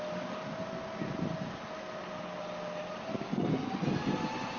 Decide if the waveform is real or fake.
real